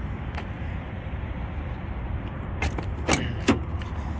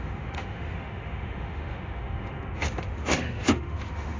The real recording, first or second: first